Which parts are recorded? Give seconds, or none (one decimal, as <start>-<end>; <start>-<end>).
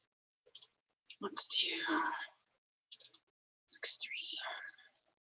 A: 3.2-5.3